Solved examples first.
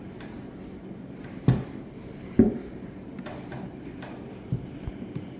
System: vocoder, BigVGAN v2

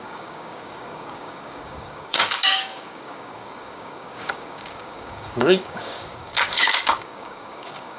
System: codec, DAC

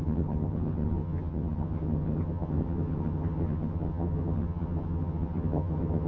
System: vocoder, HiFi-GAN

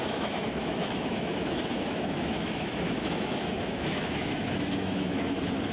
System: autoencoder, DAC-VAE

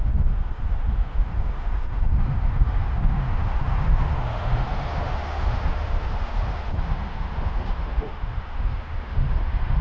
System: autoencoder, DAC-VAE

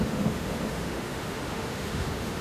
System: autoencoder, DAC-VAE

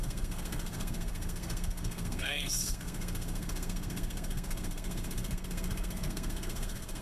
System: codec, SNAC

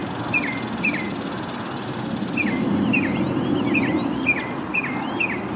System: none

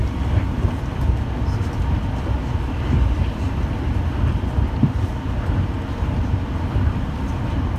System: none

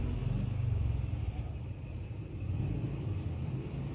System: none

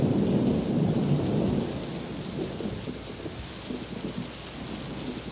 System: none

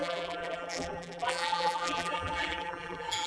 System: vocoder, BigVGAN v2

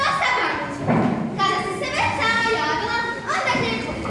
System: none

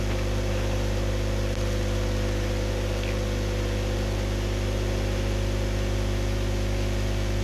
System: none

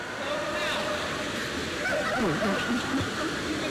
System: none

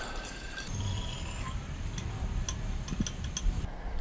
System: none